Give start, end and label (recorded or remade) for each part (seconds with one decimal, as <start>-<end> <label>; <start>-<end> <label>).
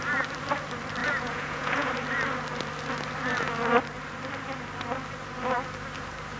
0.0-1.0 recorded; 1.0-1.9 remade; 1.9-6.4 recorded